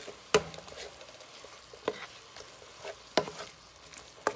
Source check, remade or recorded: recorded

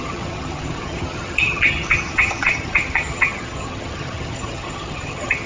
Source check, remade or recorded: remade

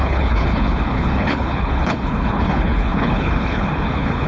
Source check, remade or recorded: remade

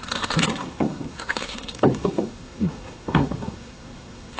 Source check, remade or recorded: remade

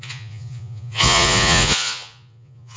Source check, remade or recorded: remade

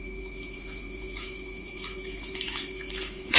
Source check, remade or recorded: remade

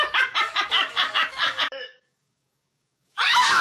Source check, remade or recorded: remade